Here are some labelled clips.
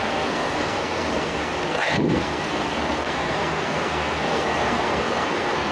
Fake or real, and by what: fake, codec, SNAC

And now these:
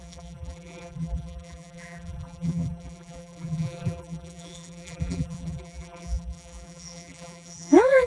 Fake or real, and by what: fake, vocoder, BigVGAN v2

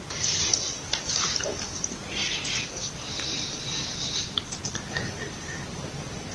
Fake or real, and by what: real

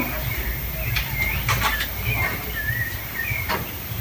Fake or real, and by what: real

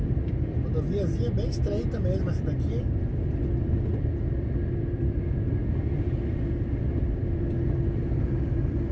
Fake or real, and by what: real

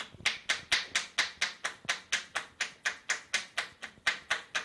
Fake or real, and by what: real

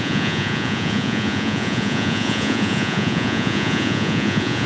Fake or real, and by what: fake, vocoder, Vocos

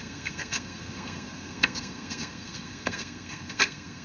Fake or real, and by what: fake, codec, SNAC